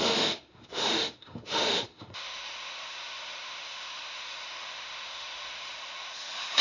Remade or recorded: remade